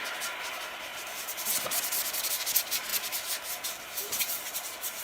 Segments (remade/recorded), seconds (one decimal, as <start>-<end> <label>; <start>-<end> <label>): 0.0-0.9 recorded; 0.9-2.3 remade; 2.3-5.0 recorded